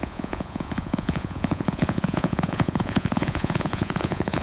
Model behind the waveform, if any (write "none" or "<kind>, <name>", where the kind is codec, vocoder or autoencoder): vocoder, Vocos